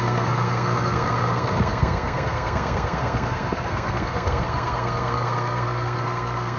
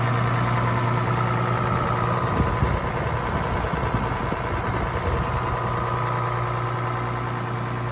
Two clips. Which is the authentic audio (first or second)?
second